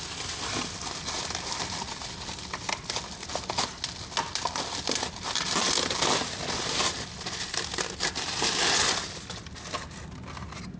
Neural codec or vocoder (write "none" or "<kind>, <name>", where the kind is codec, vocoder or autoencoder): none